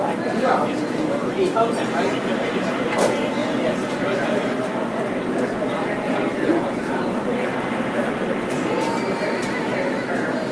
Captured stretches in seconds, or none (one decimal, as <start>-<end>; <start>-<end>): 0.0-1.2; 2.7-3.4; 4.4-6.8; 8.7-10.5